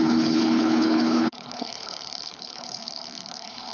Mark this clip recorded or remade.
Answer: remade